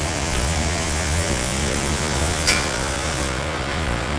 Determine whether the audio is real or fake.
fake